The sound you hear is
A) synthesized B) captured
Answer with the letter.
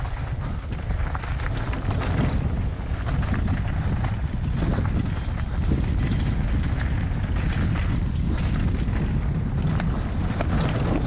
B